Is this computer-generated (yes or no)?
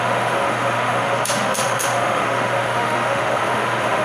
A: yes